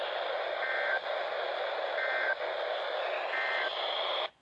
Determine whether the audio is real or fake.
real